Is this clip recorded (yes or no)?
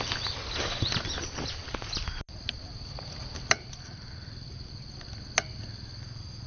yes